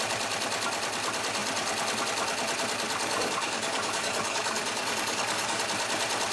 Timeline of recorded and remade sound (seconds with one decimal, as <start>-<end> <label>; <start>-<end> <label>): 0.0-3.0 recorded; 3.0-5.6 remade; 5.6-6.3 recorded